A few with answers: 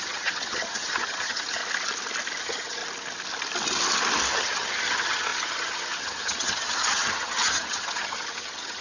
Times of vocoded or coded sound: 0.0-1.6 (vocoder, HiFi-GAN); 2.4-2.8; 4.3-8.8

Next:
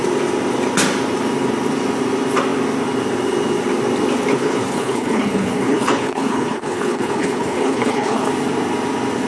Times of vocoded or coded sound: 4.3-8.3 (codec, HILCodec)